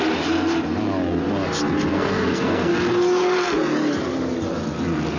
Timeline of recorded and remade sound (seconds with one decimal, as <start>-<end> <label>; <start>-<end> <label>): 0.0-1.9 recorded; 1.9-2.7 remade; 2.7-5.2 recorded